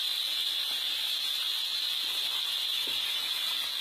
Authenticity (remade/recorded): recorded